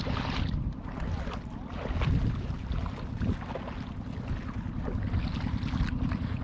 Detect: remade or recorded recorded